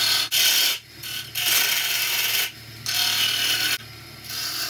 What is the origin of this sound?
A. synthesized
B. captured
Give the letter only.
B